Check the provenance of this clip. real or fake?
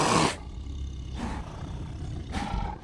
real